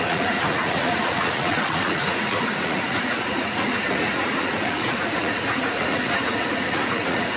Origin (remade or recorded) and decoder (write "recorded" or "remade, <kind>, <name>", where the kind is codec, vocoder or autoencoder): remade, vocoder, Vocos